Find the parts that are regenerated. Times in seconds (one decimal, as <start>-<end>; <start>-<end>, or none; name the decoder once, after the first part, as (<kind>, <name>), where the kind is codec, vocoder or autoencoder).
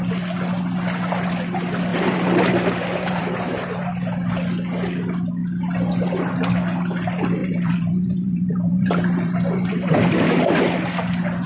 1.9-3.2 (vocoder, BigVGAN v2); 7.4-10.6